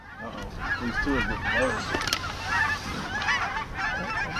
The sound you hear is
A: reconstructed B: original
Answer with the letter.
B